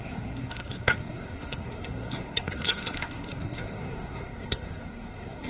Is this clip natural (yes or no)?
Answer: no